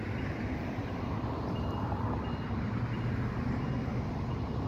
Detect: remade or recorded recorded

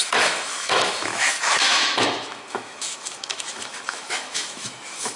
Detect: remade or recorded remade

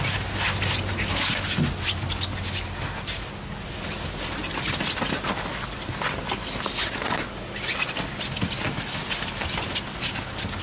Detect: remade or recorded recorded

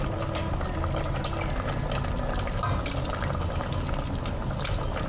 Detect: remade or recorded recorded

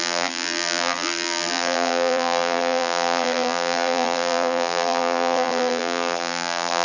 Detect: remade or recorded remade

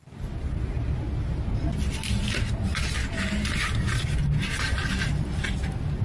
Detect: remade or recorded recorded